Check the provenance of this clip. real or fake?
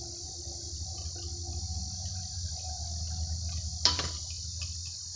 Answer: real